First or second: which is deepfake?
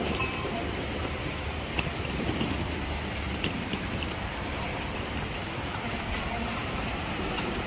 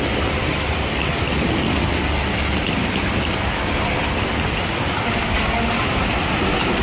first